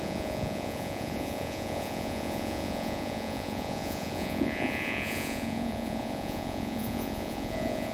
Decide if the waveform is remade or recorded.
remade